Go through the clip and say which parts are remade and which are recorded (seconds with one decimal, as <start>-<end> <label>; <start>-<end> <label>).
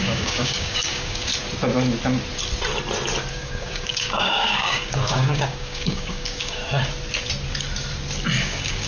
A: 0.0-1.3 remade; 1.3-3.3 recorded; 3.3-6.6 remade; 6.6-8.4 recorded; 8.4-8.9 remade